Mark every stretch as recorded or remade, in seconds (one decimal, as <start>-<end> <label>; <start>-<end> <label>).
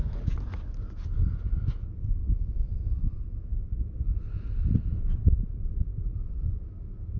0.0-7.2 recorded